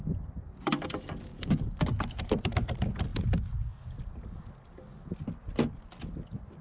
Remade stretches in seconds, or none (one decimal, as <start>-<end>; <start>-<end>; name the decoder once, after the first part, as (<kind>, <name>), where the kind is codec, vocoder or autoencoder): none